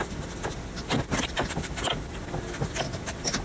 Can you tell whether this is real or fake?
real